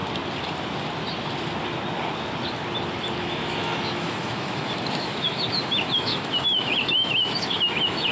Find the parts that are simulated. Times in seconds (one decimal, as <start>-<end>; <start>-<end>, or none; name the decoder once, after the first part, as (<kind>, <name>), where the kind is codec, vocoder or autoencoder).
3.2-8.1 (autoencoder, DAC-VAE)